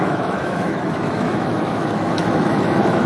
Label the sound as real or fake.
fake